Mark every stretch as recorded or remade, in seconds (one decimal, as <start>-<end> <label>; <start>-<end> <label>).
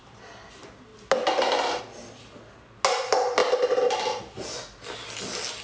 0.0-5.6 recorded